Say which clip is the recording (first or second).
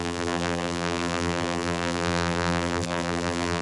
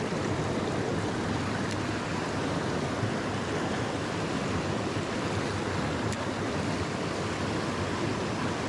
second